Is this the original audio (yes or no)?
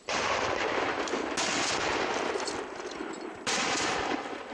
yes